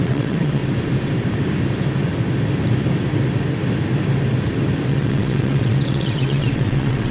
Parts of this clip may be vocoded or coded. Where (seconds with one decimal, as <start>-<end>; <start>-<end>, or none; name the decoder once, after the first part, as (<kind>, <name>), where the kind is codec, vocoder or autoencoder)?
0.0-0.6 (vocoder, WaveNeXt); 4.9-7.1